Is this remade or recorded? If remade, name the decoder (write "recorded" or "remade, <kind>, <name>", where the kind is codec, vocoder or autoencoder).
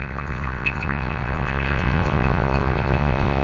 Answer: remade, vocoder, WaveNeXt